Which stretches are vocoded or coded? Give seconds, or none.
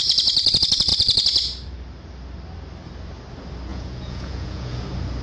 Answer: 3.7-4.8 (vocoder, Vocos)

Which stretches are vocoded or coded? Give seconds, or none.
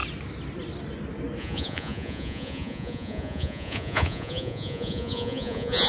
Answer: 1.4-5.9 (vocoder, Vocos)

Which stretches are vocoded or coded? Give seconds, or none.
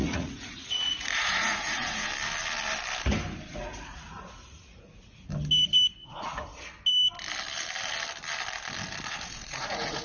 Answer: 0.0-2.1 (vocoder, Vocos); 3.5-5.3; 5.9-6.5; 9.1-10.0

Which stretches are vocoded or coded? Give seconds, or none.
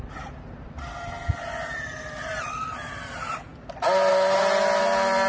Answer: none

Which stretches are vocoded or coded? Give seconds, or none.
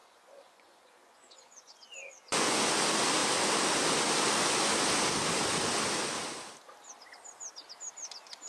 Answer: 0.0-2.7 (vocoder, Vocos)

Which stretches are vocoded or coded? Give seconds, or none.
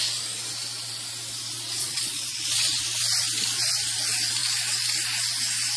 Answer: 1.8-2.8 (vocoder, Vocos)